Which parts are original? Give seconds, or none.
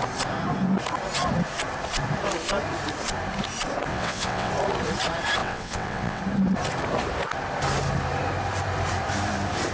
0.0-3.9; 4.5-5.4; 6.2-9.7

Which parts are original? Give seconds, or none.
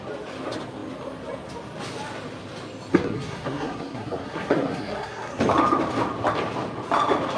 0.0-2.9; 5.4-7.4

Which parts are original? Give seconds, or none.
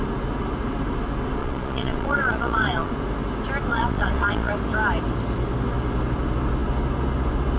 0.0-1.4; 2.9-3.7; 4.5-7.6